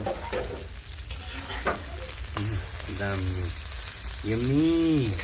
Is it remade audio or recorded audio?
recorded